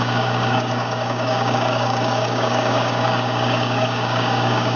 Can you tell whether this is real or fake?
fake